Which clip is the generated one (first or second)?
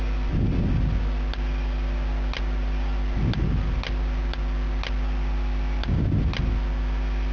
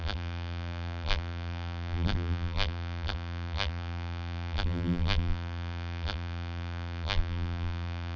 second